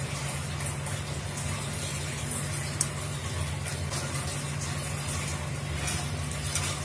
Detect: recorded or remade recorded